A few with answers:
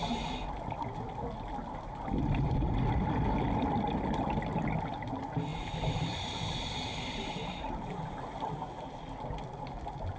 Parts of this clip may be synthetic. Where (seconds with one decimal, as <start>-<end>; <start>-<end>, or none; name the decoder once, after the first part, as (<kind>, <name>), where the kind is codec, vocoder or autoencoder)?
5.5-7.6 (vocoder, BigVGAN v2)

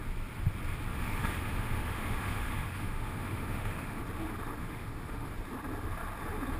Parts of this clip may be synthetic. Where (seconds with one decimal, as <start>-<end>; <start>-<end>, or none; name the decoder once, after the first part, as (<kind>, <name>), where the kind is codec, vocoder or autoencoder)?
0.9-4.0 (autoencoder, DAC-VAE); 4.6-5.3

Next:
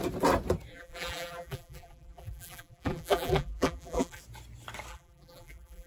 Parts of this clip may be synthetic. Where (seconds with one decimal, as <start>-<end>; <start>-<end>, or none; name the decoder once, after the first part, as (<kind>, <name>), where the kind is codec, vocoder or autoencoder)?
0.7-4.2 (vocoder, BigVGAN v2); 4.9-5.9